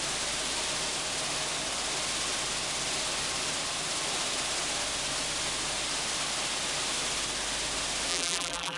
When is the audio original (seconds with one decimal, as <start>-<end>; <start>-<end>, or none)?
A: 0.0-8.1